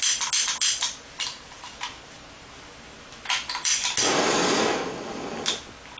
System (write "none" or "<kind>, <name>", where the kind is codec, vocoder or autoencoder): none